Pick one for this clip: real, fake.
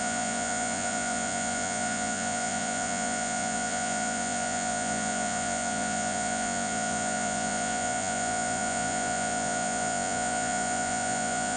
fake